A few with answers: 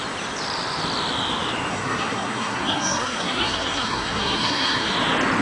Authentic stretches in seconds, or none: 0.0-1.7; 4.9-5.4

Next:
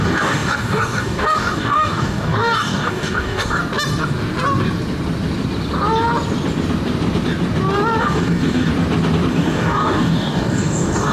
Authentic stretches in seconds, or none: 3.6-8.0; 8.7-9.3

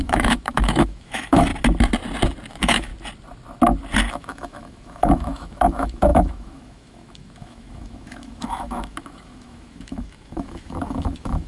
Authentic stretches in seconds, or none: 1.5-2.5; 2.9-4.1